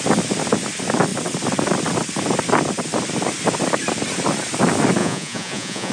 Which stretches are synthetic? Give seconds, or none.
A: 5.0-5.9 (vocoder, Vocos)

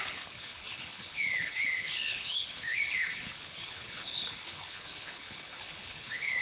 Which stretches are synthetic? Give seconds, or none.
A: 0.0-6.4 (codec, HILCodec)